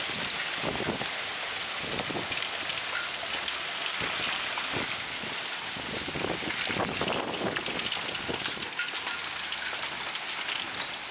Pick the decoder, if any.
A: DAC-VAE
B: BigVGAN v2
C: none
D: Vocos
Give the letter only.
C